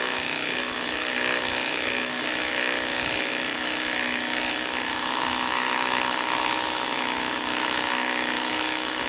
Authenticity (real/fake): fake